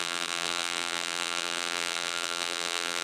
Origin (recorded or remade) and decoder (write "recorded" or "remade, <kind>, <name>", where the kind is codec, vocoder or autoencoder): remade, vocoder, BigVGAN v2